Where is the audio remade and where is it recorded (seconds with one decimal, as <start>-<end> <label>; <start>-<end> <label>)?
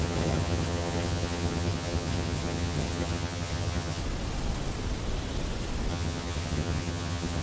0.0-4.0 remade; 4.0-5.9 recorded; 5.9-7.4 remade